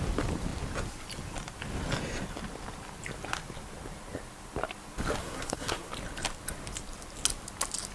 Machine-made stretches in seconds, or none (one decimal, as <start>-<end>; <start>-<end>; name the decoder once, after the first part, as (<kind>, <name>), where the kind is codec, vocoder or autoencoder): 5.2-5.9 (codec, SNAC)